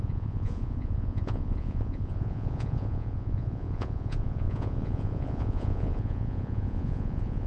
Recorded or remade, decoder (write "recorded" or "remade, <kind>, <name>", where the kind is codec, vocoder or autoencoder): remade, vocoder, Vocos